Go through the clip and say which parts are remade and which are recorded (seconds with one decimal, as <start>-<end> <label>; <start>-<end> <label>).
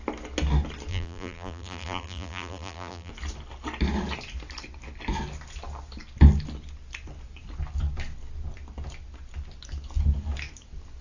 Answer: 0.0-0.9 recorded; 0.9-3.1 remade; 3.1-11.0 recorded